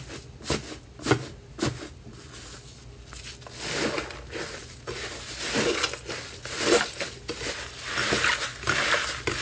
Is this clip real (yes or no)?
yes